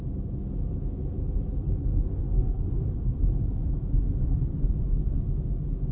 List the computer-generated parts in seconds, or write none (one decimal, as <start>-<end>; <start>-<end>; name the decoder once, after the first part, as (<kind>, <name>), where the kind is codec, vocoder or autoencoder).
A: 1.8-3.2 (codec, SNAC)